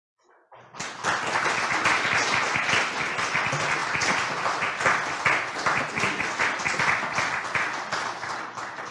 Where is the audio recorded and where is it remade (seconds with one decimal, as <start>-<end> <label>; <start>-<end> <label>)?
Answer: 0.0-8.9 recorded